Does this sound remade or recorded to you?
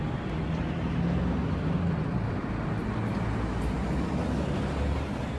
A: recorded